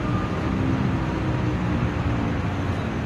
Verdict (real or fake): real